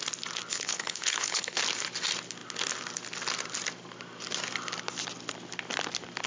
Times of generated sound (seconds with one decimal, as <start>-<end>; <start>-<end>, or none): 0.5-1.6